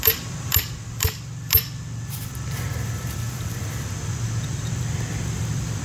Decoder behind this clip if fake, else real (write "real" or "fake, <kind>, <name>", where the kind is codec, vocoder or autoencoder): fake, vocoder, BigVGAN v2